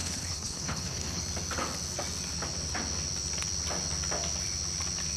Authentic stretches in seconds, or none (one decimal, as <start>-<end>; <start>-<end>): 1.2-5.2